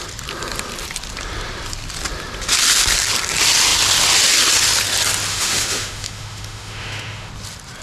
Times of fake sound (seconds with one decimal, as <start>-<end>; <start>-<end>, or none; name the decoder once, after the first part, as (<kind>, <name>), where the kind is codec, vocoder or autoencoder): 5.3-7.3 (autoencoder, DAC-VAE)

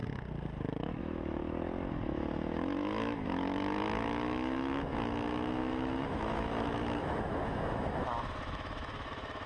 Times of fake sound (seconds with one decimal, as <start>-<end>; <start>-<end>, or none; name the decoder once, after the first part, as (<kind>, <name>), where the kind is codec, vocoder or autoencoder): 1.0-1.4 (autoencoder, DAC-VAE); 2.1-9.5

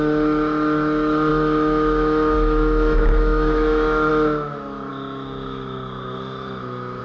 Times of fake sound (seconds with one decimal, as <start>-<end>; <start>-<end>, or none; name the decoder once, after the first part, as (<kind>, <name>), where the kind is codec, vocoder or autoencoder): 0.0-7.0 (autoencoder, DAC-VAE)

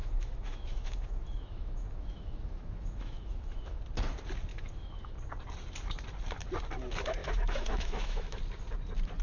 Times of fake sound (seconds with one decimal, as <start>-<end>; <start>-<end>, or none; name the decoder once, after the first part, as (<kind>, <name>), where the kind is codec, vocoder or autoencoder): 0.0-3.8 (autoencoder, DAC-VAE); 4.5-5.1; 7.2-8.4

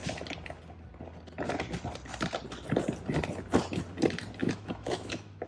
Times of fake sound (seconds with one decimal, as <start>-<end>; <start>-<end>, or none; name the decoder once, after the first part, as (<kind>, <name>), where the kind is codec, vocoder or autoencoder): 4.4-5.5 (autoencoder, DAC-VAE)

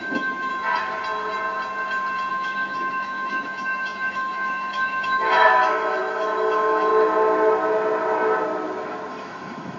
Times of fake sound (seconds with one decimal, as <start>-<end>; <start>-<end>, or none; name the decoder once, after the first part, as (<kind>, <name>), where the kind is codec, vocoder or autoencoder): 0.0-0.5 (autoencoder, DAC-VAE); 2.3-6.9; 9.1-9.8